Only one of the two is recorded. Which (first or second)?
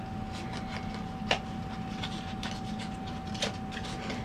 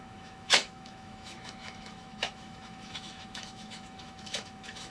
first